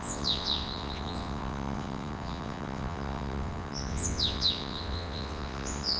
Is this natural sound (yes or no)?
no